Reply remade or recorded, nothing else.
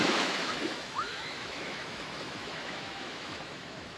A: remade